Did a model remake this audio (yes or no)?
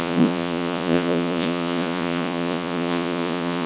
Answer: yes